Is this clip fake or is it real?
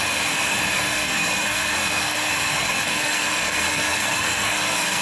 fake